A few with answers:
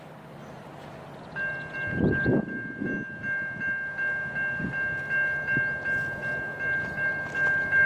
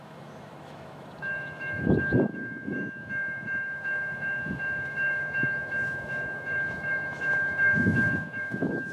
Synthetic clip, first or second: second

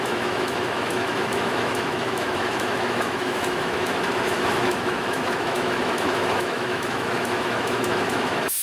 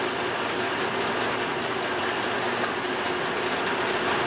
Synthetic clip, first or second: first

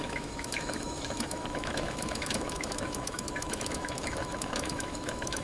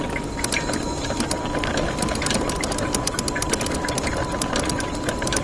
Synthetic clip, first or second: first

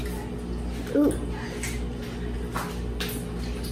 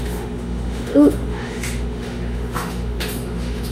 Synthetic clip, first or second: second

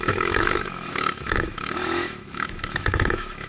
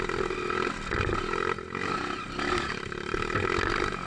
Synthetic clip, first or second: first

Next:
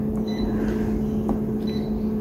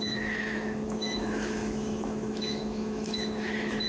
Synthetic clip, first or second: second